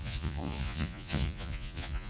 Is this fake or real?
fake